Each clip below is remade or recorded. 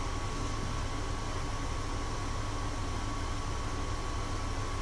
recorded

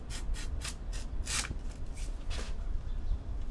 recorded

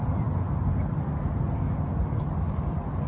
recorded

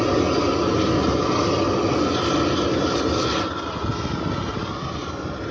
recorded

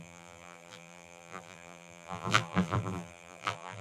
remade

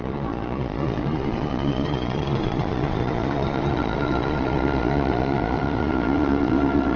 remade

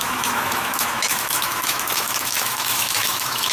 remade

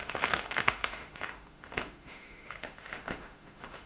remade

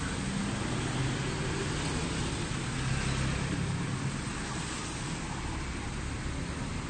recorded